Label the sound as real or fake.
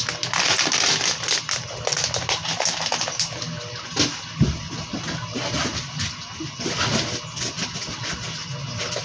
real